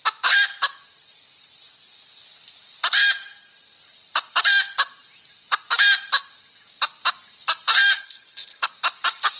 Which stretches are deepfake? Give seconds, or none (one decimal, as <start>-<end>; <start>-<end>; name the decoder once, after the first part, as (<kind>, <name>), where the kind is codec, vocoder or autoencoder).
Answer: 8.0-8.7 (codec, HILCodec)